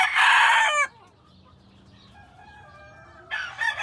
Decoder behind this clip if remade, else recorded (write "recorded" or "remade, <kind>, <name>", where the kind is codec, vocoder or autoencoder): recorded